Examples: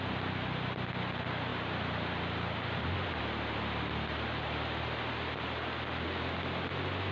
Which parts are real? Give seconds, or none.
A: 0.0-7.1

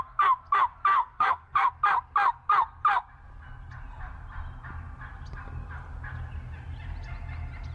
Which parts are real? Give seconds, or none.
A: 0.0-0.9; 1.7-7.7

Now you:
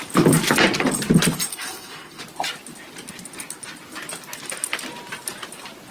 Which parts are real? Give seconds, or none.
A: 0.0-1.5; 2.2-5.9